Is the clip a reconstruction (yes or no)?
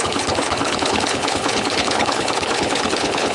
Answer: yes